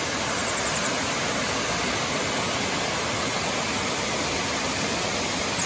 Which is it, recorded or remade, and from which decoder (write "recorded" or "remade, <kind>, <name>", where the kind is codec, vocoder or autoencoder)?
recorded